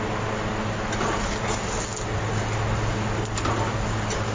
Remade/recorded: recorded